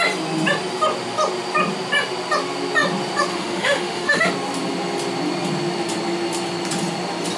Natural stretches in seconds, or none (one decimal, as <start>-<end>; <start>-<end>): 0.0-3.3; 4.3-7.4